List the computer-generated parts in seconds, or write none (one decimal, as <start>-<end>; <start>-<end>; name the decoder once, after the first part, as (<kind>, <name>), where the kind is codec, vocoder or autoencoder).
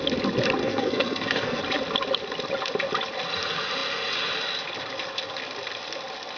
0.6-1.6 (codec, SNAC)